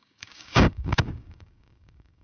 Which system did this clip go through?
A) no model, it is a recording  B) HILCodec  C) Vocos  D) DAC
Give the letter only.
D